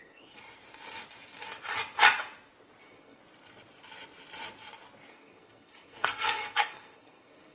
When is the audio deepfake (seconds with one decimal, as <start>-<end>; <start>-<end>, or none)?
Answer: 0.0-0.4; 2.8-3.2; 5.1-7.5